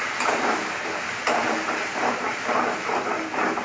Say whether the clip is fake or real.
fake